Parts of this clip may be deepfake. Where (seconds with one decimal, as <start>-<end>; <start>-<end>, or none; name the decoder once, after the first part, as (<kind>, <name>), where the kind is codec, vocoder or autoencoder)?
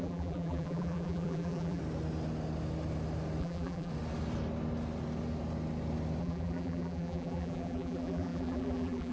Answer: 0.0-1.8 (vocoder, BigVGAN v2); 3.4-3.9; 6.2-9.1